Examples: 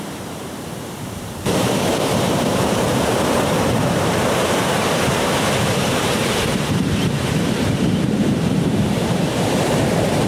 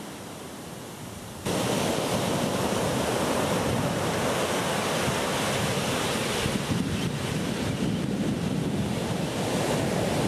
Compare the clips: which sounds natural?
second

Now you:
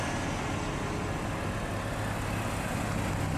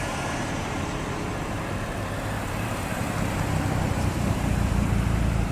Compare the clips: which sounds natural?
first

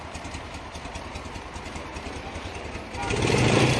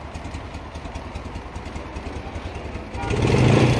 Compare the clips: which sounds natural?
second